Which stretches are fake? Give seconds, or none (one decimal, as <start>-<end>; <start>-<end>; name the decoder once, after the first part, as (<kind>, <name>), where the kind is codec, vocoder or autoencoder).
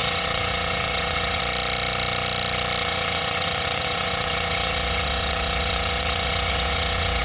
0.0-1.4 (vocoder, WaveNeXt); 2.8-7.2